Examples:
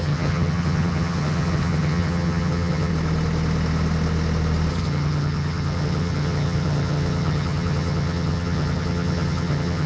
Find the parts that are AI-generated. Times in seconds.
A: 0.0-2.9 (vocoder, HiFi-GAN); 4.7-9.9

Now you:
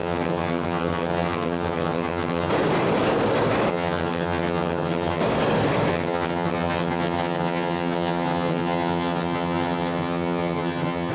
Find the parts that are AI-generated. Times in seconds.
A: 0.0-2.5 (vocoder, HiFi-GAN); 3.7-5.2; 5.9-11.1

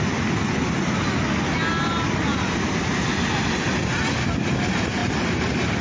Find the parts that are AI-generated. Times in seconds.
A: none

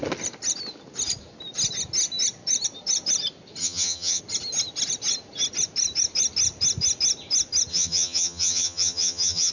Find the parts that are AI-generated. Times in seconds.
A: 3.6-4.2 (vocoder, HiFi-GAN); 7.7-9.5